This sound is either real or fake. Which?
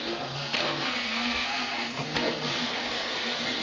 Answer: fake